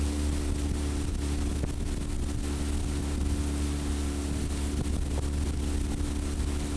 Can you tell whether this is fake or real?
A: real